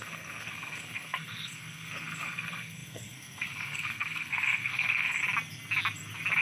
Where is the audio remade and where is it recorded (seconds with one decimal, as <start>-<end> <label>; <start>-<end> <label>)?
0.0-5.2 remade; 5.2-6.4 recorded